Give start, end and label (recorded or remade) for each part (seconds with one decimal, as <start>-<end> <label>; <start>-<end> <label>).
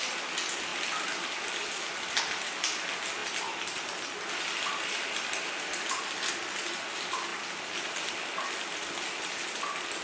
0.0-10.0 recorded